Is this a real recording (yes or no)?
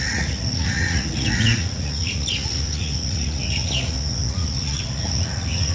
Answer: no